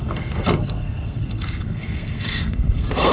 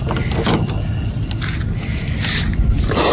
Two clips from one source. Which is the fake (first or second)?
first